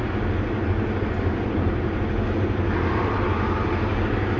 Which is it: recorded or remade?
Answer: recorded